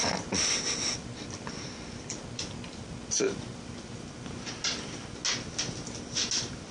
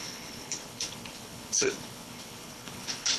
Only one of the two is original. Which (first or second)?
first